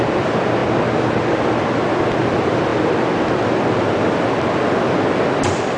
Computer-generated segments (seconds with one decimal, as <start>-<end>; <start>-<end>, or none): none